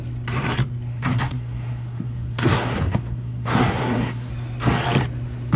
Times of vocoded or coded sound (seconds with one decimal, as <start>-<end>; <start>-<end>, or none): 0.9-4.3